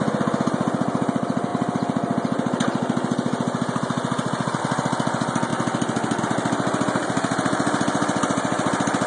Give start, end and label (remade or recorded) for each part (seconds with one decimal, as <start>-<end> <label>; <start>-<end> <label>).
0.0-9.1 recorded